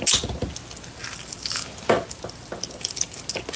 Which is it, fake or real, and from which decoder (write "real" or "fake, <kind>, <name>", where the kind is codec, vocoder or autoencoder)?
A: real